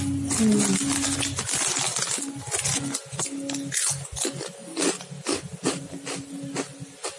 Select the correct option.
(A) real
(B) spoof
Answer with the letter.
A